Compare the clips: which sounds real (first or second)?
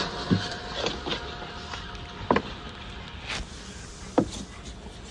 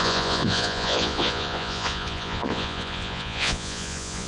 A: first